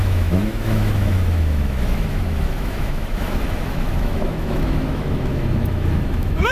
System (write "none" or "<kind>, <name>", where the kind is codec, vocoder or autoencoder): autoencoder, DAC-VAE